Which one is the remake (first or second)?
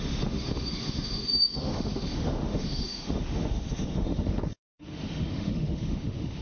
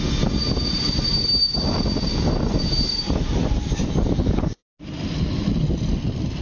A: first